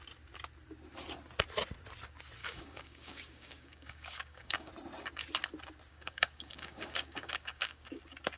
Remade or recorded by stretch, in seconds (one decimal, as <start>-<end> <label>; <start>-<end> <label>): 0.0-2.4 recorded; 2.4-4.7 remade; 4.7-5.9 recorded; 5.9-8.0 remade; 8.0-8.4 recorded